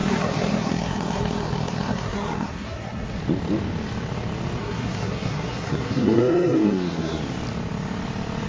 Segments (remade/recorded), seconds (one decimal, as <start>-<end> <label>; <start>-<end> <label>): 0.0-3.2 remade; 3.2-4.6 recorded; 4.6-7.2 remade; 7.2-8.5 recorded